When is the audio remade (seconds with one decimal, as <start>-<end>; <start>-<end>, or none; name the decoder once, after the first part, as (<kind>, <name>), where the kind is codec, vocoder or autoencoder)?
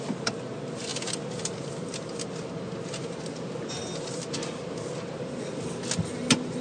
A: none